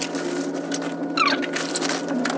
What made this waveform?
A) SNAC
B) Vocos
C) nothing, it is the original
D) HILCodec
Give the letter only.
C